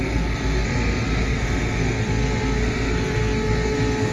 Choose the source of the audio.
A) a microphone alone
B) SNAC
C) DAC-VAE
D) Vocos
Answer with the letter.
B